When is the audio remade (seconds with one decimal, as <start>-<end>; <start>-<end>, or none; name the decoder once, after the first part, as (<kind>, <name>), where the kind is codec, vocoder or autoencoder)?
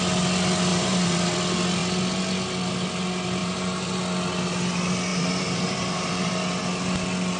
0.7-1.3 (vocoder, BigVGAN v2); 3.4-4.0; 5.1-6.3